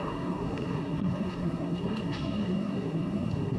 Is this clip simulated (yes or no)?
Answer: yes